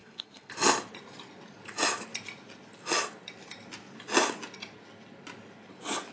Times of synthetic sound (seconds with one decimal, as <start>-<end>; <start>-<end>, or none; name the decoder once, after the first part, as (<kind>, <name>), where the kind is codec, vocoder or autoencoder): 0.0-0.5 (codec, SNAC)